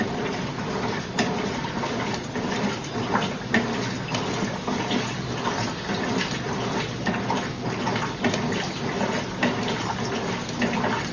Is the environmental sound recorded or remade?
recorded